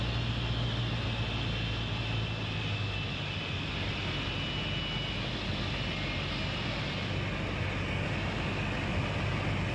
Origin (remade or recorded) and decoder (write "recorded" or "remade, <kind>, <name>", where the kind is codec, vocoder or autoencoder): recorded